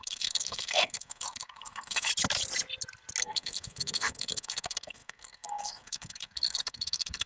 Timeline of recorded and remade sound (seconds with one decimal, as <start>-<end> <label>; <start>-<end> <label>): 0.0-2.1 remade; 2.1-3.2 recorded; 3.2-7.3 remade